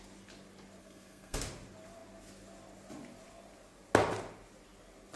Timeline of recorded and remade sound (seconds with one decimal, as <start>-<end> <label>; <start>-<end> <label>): 0.0-0.8 recorded; 0.8-1.4 remade; 1.4-5.2 recorded